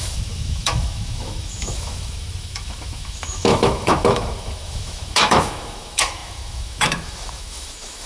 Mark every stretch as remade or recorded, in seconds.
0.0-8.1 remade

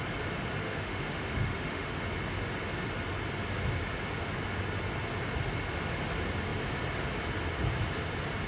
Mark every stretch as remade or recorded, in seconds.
0.0-0.6 recorded; 0.6-2.0 remade; 2.0-8.5 recorded

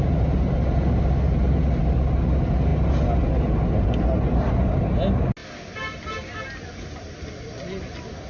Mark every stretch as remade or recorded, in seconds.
0.0-8.3 recorded

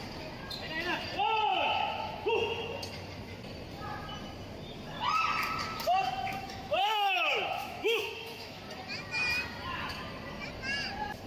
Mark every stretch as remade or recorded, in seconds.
0.0-1.5 recorded; 1.5-2.3 remade; 2.3-5.7 recorded; 5.7-8.6 remade; 8.6-11.3 recorded

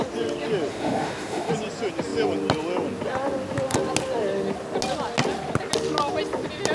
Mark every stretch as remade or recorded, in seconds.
0.0-0.7 recorded; 0.7-1.5 remade; 1.5-6.7 recorded

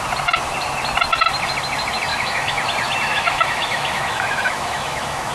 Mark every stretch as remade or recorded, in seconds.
0.0-2.1 recorded; 2.1-2.6 remade; 2.6-3.1 recorded; 3.1-5.3 remade